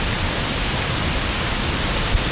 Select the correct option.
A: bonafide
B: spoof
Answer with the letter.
A